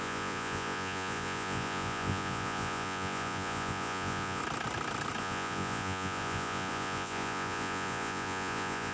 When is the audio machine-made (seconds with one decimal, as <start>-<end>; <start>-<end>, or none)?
0.0-4.4; 5.2-8.9